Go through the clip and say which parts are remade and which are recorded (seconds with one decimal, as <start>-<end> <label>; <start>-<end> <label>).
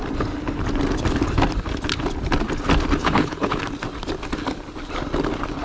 0.0-3.0 recorded; 3.0-3.6 remade; 3.6-5.6 recorded